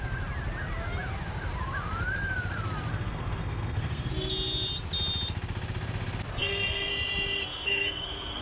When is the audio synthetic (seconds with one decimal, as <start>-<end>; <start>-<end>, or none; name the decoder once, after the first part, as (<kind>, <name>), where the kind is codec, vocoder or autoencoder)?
2.9-4.1 (codec, SNAC); 6.4-6.9; 7.5-8.4